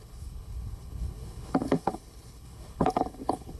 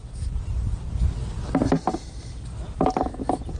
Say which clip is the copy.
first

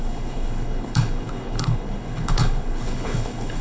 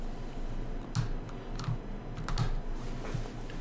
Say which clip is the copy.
first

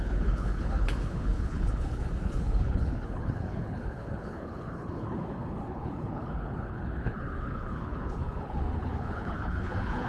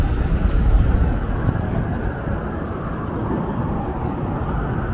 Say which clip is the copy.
first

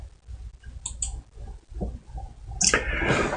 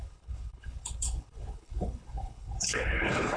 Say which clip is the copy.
second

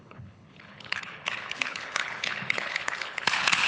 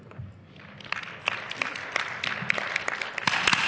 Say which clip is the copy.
first